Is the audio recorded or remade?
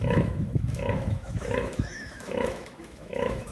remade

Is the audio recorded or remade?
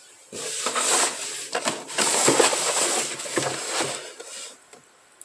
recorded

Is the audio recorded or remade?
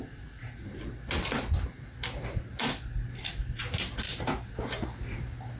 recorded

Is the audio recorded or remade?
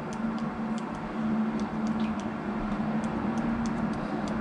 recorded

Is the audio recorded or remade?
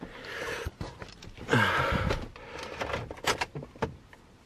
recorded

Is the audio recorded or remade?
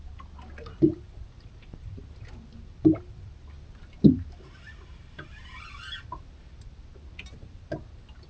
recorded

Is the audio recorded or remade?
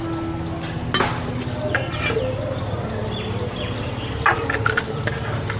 recorded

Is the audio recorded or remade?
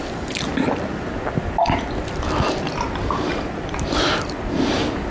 recorded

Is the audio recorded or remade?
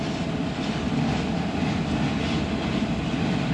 recorded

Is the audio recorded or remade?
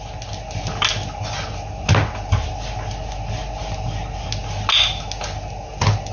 recorded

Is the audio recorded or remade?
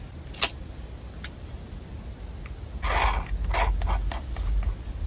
recorded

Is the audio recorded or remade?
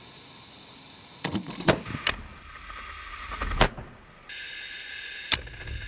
recorded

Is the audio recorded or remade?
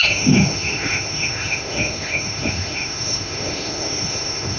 remade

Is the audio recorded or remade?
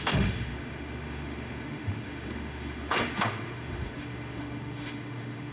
remade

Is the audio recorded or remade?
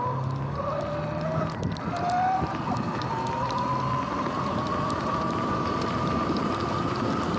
recorded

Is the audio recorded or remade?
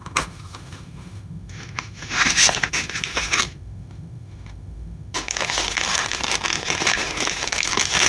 remade